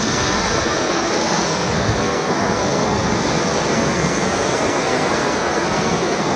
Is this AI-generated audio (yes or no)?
yes